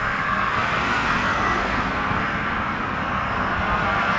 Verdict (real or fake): fake